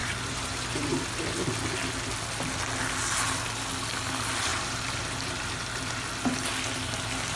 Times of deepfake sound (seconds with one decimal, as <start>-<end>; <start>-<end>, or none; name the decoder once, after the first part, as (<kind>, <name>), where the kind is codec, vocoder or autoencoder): 0.0-1.0 (vocoder, BigVGAN v2); 4.5-5.9